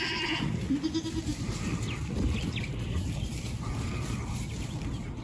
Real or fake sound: real